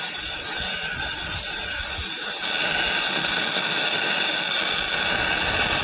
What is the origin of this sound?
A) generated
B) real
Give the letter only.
B